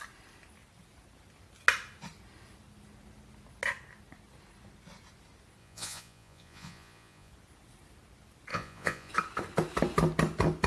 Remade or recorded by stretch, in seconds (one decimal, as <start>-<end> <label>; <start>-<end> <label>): 0.0-5.6 recorded; 5.6-7.3 remade; 7.3-8.5 recorded; 8.5-9.1 remade; 9.1-10.7 recorded